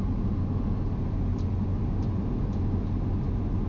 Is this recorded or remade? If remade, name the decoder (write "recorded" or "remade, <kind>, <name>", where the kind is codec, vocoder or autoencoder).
recorded